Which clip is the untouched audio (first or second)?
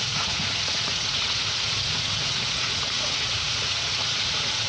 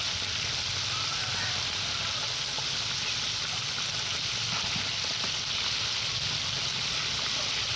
second